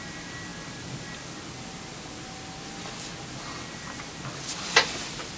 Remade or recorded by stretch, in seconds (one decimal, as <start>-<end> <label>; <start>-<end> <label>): 0.0-5.4 recorded